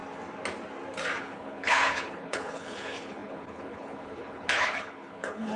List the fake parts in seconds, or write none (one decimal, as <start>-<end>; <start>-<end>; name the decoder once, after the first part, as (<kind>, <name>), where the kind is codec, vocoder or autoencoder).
1.2-5.6 (codec, HILCodec)